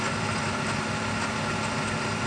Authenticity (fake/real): real